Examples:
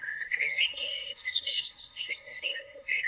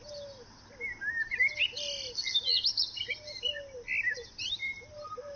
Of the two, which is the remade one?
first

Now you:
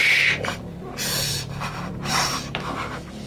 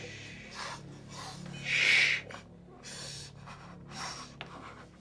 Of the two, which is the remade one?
first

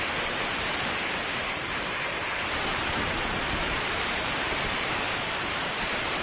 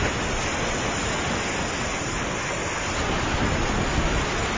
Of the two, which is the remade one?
first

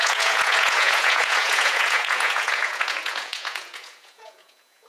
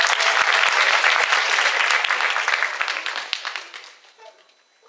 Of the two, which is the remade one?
first